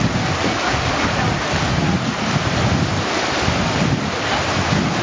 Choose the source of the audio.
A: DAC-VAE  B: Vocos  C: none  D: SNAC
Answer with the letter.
C